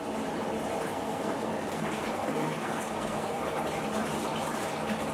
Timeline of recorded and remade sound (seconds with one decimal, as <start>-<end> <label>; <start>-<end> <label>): 0.0-0.9 recorded; 0.9-3.4 remade; 3.4-5.1 recorded